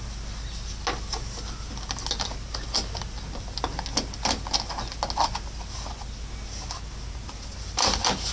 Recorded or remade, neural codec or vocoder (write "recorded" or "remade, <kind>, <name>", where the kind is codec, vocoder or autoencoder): recorded